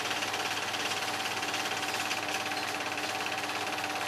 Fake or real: real